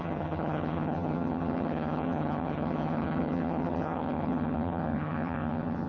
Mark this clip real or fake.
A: fake